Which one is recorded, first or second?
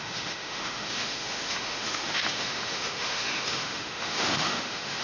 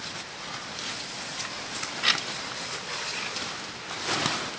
second